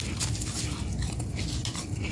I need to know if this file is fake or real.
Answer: real